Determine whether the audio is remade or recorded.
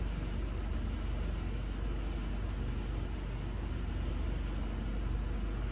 recorded